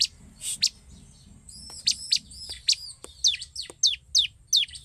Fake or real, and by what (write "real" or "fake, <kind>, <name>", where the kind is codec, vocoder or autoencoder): real